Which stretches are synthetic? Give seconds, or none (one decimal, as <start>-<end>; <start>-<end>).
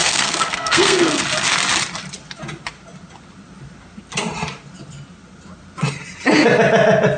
0.0-1.2